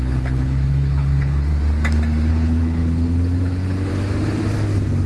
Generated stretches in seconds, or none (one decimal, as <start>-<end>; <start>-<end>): 0.0-1.5; 2.3-3.9